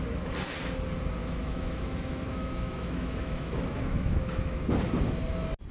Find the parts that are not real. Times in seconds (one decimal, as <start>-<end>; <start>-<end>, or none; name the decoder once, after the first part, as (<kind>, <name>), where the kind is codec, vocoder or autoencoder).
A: 1.2-4.6 (autoencoder, DAC-VAE)